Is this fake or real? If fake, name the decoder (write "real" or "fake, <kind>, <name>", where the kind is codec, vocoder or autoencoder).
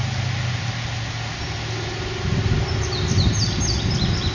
real